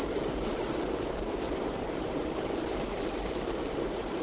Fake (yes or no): no